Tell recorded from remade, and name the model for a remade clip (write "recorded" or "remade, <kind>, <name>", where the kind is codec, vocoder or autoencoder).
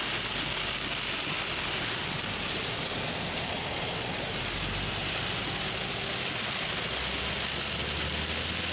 recorded